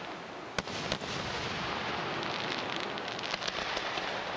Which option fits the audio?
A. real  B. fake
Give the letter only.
A